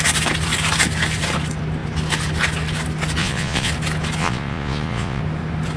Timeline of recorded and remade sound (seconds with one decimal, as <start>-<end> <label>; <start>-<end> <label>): 0.0-3.2 recorded; 3.2-3.7 remade; 3.7-4.2 recorded; 4.2-5.2 remade; 5.2-5.8 recorded